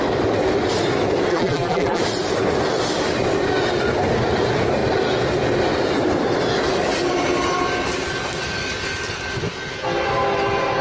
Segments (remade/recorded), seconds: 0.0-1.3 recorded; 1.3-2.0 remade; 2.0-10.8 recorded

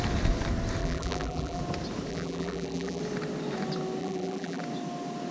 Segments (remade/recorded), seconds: 0.0-0.8 recorded; 0.8-1.6 remade; 1.6-2.1 recorded; 2.1-3.0 remade; 3.0-4.0 recorded; 4.0-4.6 remade; 4.6-5.3 recorded